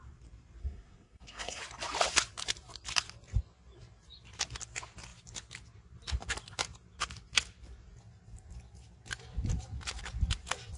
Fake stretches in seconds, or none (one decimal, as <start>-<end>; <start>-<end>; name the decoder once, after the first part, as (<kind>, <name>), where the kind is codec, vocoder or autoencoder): 0.6-1.6 (codec, SNAC)